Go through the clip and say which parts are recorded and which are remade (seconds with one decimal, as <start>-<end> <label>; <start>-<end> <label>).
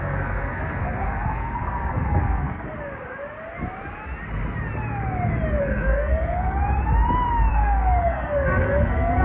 0.0-2.7 remade; 2.7-5.6 recorded; 5.6-6.6 remade; 6.6-7.5 recorded; 7.5-9.2 remade